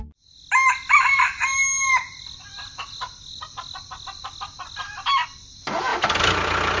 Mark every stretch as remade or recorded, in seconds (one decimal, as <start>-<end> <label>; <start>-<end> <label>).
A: 0.0-6.8 recorded